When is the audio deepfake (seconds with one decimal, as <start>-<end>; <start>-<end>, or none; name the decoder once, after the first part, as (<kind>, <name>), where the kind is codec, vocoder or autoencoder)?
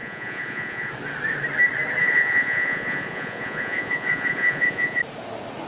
0.0-0.9 (vocoder, Vocos); 2.0-5.0